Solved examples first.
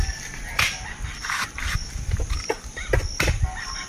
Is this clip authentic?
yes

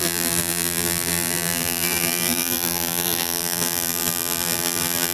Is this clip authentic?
no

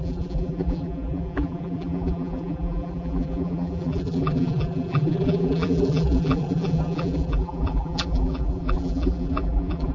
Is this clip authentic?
no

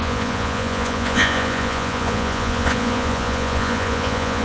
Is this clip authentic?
no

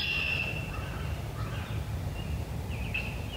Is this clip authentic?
no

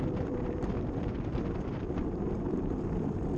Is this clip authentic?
no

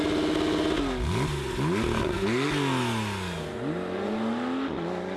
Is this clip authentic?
yes